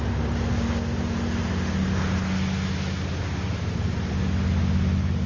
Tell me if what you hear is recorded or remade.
recorded